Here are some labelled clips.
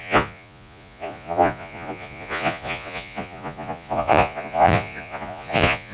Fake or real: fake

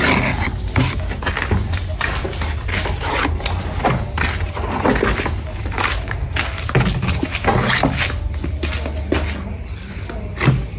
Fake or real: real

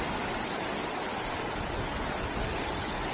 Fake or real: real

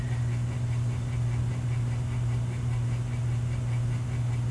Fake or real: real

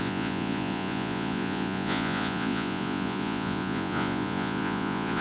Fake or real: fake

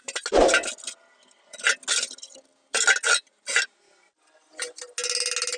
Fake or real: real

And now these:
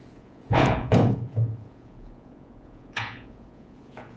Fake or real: fake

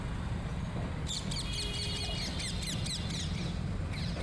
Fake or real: real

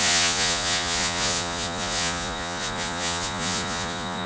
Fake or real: fake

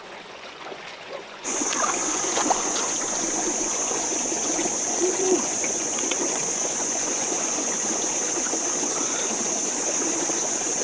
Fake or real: fake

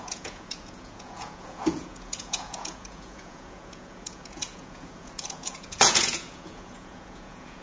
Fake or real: fake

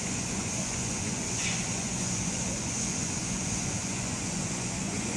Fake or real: fake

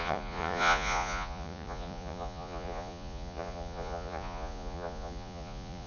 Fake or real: fake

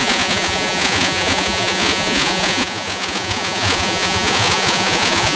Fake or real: fake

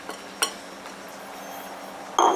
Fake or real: real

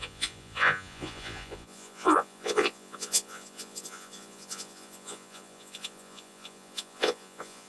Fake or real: fake